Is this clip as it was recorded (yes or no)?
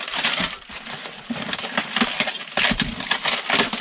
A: yes